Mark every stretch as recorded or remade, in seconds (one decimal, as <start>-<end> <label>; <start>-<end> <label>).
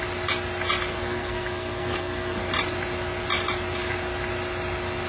0.0-0.9 recorded; 0.9-2.5 remade; 2.5-5.1 recorded